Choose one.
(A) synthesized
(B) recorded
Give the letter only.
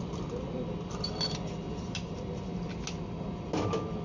B